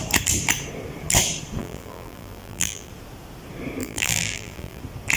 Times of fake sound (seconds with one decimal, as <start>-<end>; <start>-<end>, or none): 1.6-2.9; 3.8-4.8